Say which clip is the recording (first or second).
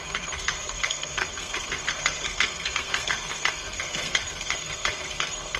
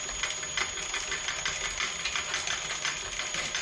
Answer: second